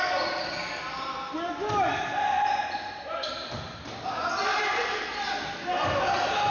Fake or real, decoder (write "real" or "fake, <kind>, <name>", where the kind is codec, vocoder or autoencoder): real